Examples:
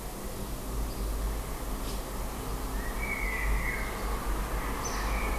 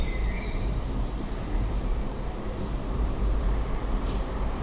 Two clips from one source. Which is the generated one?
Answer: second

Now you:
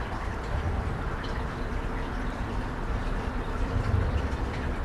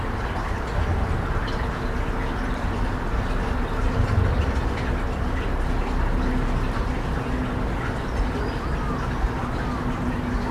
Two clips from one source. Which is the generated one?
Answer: first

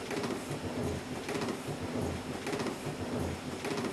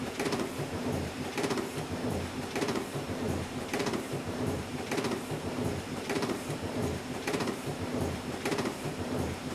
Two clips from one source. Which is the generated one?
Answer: second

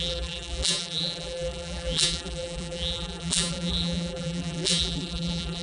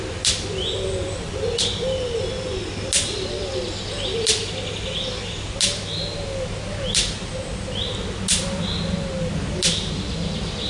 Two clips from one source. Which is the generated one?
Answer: first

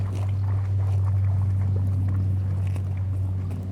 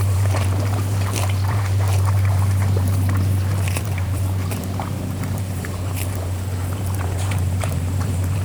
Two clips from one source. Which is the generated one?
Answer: second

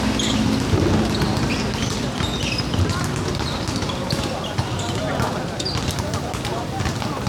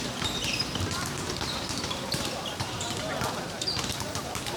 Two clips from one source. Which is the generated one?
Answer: second